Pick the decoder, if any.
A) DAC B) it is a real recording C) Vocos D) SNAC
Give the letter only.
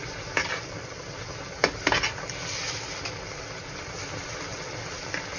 B